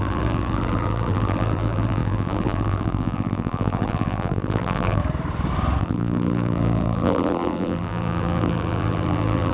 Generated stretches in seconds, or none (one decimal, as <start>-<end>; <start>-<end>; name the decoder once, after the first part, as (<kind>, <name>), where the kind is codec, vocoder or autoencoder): 0.0-5.0 (vocoder, BigVGAN v2); 5.8-9.5